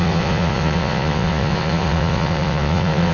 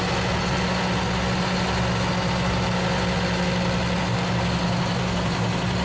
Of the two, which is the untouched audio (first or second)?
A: second